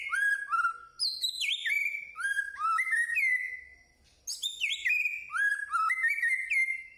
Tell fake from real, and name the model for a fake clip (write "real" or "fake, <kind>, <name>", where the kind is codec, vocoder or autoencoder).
real